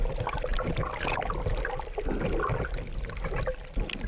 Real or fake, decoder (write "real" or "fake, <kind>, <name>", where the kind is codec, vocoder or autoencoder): real